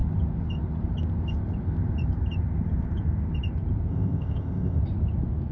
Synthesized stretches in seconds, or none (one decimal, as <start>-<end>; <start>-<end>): 3.9-4.8